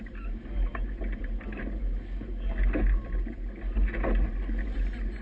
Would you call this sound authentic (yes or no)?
yes